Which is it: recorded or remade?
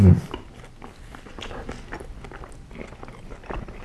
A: recorded